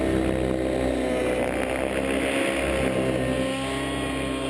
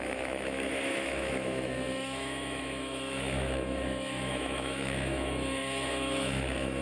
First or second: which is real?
first